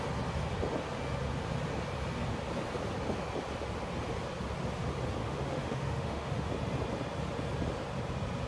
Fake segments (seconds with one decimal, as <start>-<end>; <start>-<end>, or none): 5.2-6.5